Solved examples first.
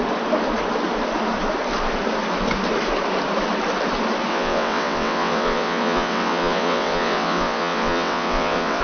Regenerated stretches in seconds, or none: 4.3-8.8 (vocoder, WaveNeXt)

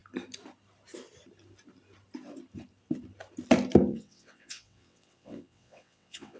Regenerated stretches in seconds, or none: 3.9-6.4 (vocoder, WaveNeXt)

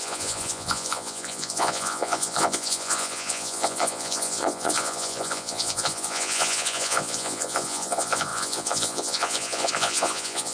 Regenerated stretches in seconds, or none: 0.0-10.5 (vocoder, Vocos)

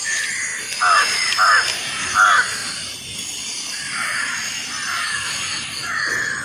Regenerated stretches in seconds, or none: none